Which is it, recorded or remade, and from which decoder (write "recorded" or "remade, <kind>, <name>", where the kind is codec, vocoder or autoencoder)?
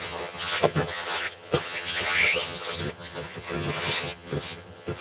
remade, vocoder, HiFi-GAN